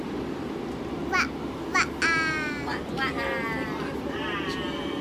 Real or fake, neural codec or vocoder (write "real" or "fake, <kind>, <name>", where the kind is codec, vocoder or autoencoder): real